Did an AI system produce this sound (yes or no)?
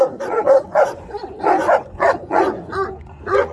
yes